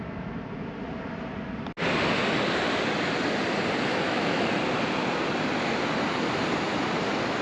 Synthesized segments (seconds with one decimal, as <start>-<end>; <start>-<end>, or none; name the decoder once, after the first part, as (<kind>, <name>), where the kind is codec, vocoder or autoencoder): 3.9-4.6 (autoencoder, DAC-VAE)